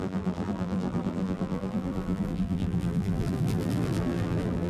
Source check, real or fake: fake